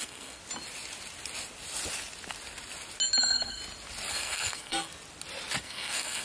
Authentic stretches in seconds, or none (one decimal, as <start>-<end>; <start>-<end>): 0.4-3.2; 3.6-4.1; 4.9-5.6